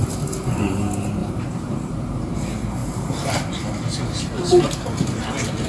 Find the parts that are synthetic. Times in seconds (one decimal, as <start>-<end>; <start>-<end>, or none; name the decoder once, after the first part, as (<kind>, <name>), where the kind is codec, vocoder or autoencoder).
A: 1.2-2.3 (vocoder, BigVGAN v2); 2.8-3.5